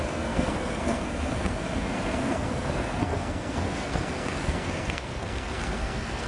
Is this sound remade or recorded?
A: remade